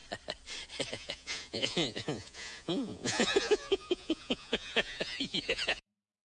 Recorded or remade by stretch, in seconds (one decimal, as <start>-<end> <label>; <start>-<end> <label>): 0.0-0.9 recorded; 0.9-6.3 remade